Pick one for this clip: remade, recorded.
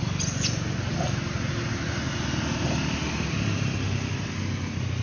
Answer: recorded